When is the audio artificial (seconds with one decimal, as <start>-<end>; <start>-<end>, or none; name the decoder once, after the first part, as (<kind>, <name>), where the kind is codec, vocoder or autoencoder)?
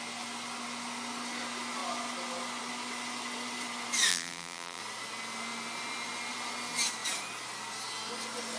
4.1-4.8 (vocoder, BigVGAN v2)